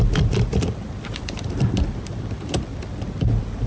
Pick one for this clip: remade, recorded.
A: remade